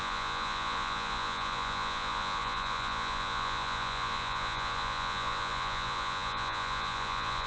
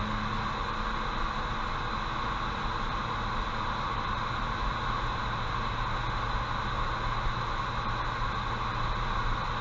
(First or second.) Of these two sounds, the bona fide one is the second